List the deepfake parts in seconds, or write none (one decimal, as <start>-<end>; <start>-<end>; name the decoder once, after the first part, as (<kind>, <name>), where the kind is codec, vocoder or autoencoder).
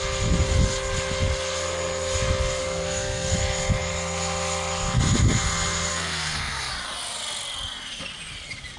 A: 2.6-3.3 (codec, SNAC); 5.9-6.7